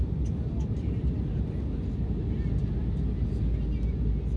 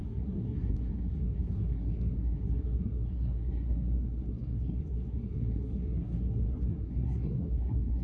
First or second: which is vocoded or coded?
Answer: second